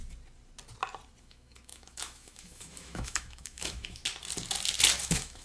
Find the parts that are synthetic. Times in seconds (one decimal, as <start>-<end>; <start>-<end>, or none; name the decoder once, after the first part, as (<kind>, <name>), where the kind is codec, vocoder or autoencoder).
1.2-4.0 (autoencoder, DAC-VAE); 5.0-5.4